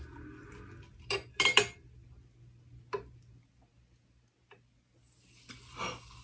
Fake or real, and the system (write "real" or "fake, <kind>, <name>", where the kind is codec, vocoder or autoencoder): real